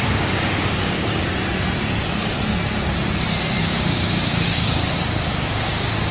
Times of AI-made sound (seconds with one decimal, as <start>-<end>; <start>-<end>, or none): 0.0-1.2; 3.6-6.1